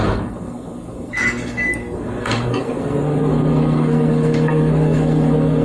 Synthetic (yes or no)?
yes